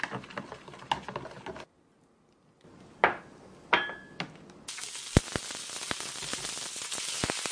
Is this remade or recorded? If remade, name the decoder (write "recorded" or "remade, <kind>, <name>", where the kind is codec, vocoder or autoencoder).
recorded